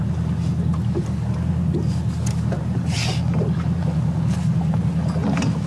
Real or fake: real